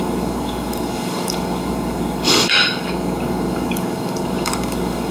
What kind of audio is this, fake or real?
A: fake